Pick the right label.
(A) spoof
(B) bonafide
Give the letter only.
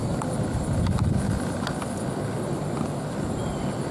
B